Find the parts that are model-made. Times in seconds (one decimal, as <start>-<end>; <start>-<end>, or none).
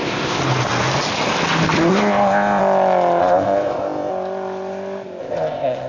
0.0-0.4; 1.9-2.6; 3.2-4.1; 5.2-5.9